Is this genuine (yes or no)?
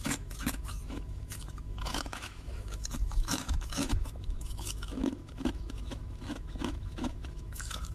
no